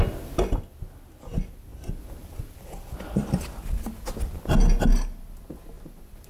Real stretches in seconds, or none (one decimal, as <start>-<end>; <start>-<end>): 0.0-6.3